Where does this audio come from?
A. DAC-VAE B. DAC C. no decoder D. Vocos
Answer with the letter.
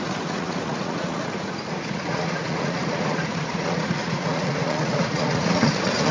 D